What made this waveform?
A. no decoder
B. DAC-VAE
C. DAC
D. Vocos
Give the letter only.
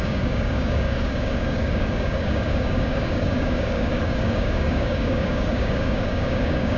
C